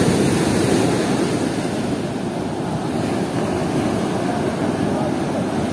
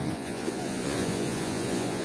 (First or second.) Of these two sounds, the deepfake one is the second